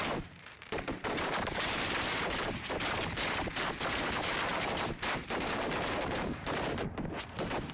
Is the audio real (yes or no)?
no